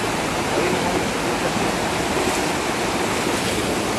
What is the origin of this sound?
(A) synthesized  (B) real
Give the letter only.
B